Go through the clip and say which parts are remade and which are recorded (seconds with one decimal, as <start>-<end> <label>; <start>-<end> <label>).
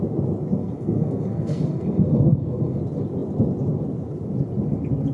0.0-0.6 recorded; 0.6-2.8 remade; 2.8-5.1 recorded